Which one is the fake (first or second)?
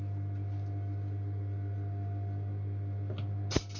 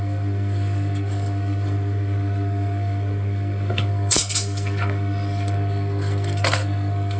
second